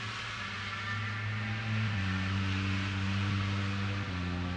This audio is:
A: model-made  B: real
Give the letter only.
B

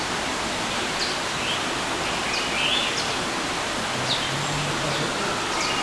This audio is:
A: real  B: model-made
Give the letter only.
A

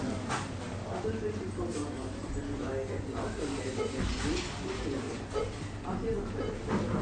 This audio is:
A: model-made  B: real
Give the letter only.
B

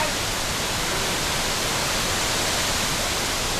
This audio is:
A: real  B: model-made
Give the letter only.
A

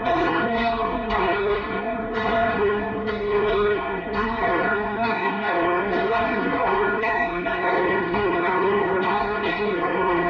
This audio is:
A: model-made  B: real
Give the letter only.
A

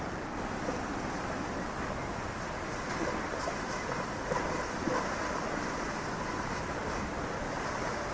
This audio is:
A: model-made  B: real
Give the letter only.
B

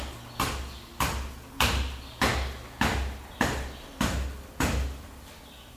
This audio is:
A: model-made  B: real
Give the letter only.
B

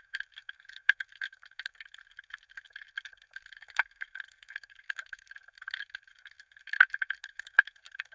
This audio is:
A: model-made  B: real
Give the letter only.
A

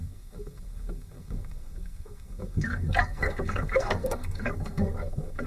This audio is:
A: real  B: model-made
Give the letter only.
B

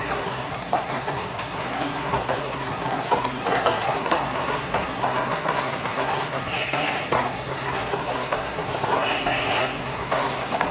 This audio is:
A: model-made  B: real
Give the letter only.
A